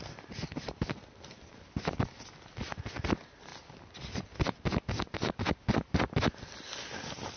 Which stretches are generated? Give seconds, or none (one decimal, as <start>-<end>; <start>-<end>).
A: none